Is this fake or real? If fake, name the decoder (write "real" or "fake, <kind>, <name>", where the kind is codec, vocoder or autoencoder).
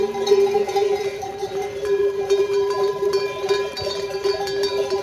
fake, vocoder, BigVGAN v2